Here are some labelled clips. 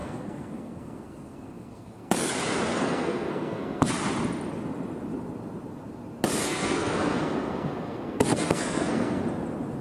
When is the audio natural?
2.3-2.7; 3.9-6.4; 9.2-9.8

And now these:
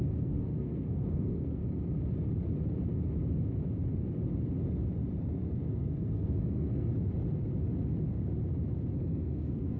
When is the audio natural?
1.6-5.6; 6.9-8.9